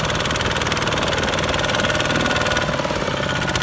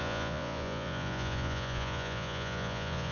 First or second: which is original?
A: first